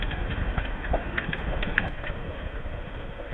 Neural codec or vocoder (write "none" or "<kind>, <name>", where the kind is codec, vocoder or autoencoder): autoencoder, DAC-VAE